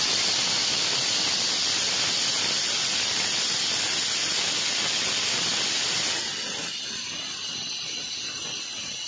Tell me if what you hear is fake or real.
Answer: real